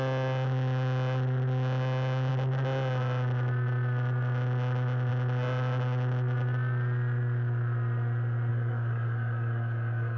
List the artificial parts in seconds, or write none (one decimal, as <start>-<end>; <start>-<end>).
8.5-10.2

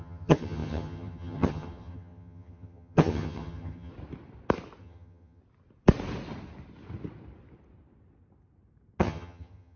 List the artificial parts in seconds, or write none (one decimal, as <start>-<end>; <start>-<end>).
0.0-3.9; 4.8-5.4; 9.0-9.8

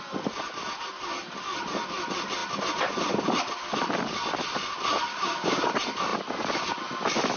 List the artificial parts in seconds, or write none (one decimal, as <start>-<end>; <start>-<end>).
5.1-5.6

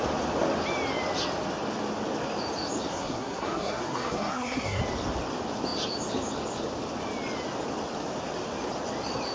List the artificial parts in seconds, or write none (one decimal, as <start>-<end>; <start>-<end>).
2.9-4.8